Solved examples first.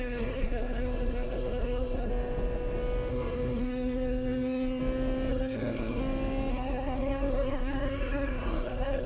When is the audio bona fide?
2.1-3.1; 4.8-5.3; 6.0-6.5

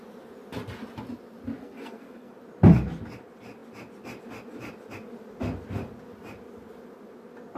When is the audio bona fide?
0.0-1.6; 2.3-7.6

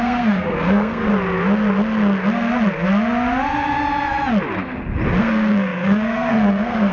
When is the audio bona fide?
1.1-5.2

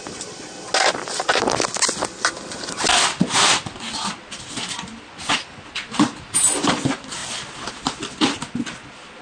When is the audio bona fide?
0.0-9.2

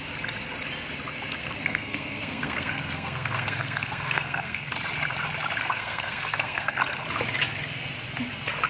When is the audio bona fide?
0.0-1.4; 4.7-5.6; 6.8-8.7

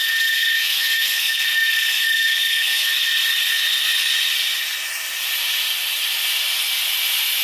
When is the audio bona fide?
2.9-7.4